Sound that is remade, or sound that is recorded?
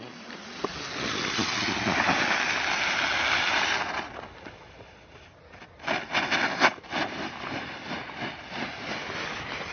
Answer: recorded